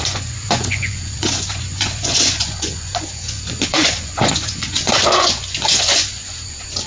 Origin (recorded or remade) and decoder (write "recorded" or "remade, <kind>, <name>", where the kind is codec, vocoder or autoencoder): remade, vocoder, Vocos